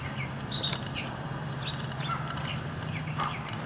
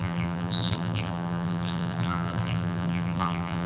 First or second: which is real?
first